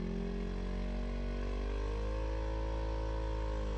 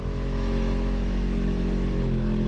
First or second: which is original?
first